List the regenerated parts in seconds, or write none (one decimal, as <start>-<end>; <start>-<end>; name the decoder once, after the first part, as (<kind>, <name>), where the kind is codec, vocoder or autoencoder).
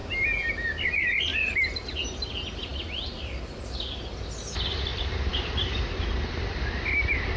1.3-2.0 (vocoder, BigVGAN v2); 4.9-6.6